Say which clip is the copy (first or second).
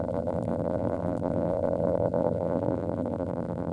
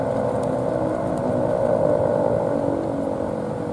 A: first